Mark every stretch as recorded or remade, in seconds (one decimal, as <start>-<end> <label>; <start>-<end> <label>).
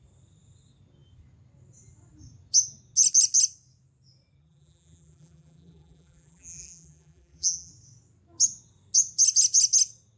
0.0-4.4 recorded; 4.4-7.7 remade; 7.7-10.2 recorded